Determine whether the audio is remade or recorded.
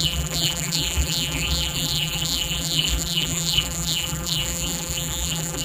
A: remade